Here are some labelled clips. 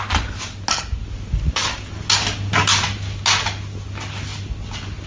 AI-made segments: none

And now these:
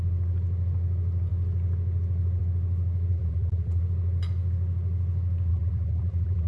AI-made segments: 3.1-3.8; 5.5-6.5

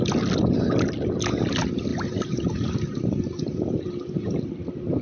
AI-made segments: 1.9-4.4

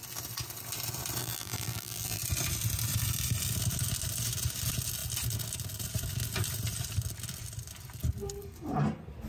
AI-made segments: 1.2-2.2

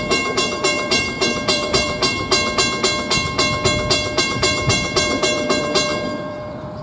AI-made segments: 0.0-2.0; 4.2-6.8